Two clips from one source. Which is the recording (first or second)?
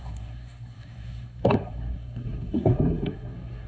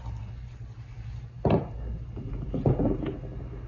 second